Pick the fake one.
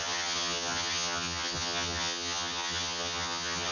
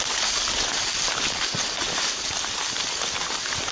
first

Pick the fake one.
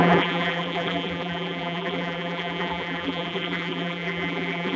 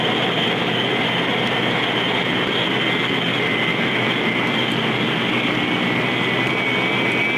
first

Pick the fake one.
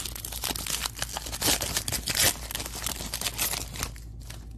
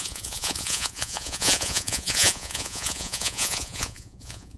second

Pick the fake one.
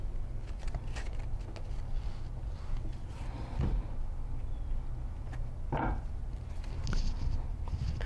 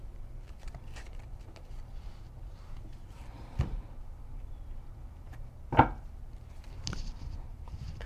second